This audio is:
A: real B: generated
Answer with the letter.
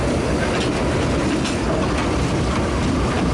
A